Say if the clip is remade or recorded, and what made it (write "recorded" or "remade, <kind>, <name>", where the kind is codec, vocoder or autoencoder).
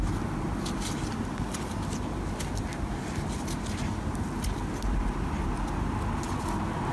recorded